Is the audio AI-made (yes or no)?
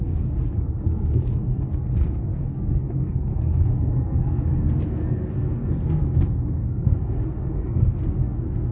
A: yes